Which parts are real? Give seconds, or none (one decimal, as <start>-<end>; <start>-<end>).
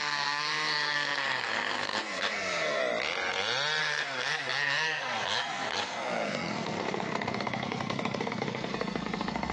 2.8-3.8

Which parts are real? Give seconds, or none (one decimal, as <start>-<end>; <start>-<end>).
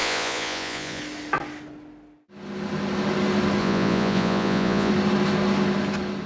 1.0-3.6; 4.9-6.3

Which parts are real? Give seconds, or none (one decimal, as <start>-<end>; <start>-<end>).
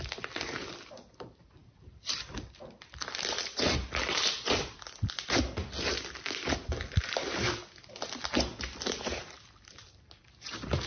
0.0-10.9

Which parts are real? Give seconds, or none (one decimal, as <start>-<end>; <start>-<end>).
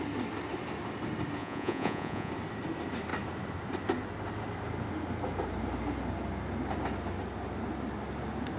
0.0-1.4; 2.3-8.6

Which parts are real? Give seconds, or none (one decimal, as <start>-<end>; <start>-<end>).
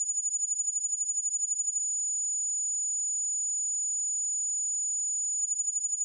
1.8-5.4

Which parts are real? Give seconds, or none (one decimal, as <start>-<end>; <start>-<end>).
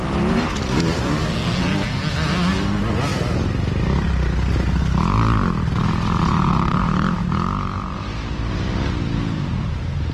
0.0-6.7; 7.3-10.1